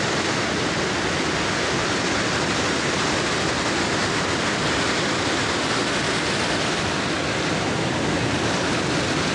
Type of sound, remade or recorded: recorded